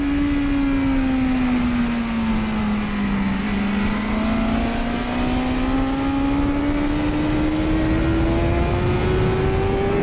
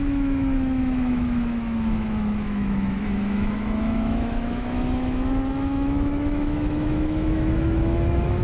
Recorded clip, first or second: first